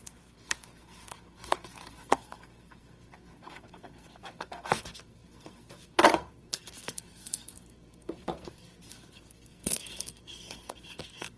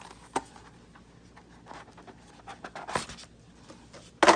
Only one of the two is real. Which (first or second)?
second